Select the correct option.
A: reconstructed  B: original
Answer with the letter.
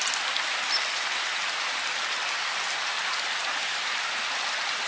B